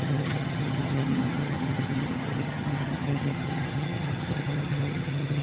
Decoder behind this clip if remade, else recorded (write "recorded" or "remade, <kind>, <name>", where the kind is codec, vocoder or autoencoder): remade, vocoder, HiFi-GAN